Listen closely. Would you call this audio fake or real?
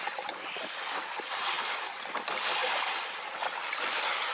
real